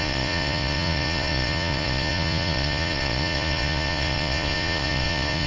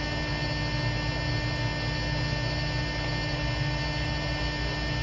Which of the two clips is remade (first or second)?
first